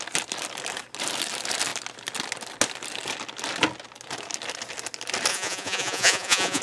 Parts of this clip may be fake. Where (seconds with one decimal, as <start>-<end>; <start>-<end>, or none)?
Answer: 5.3-6.6